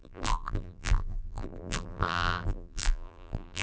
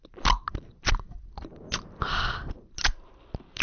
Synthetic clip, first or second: first